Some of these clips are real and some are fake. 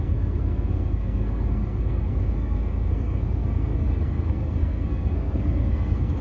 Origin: fake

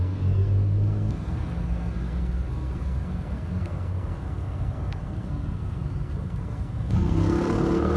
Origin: fake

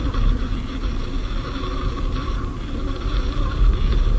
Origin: real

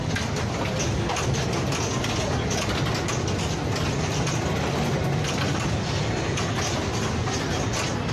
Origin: real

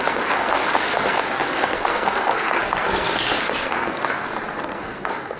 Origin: fake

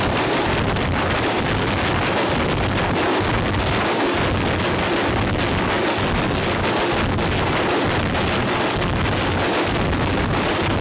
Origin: real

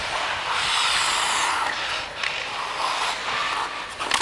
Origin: real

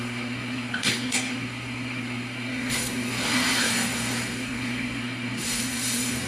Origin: fake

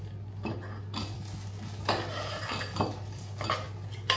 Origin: real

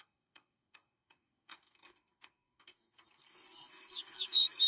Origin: fake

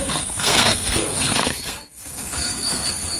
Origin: fake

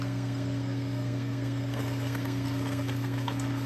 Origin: fake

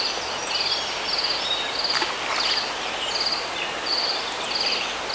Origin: real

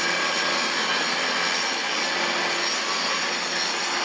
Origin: real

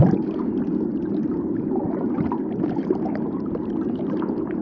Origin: real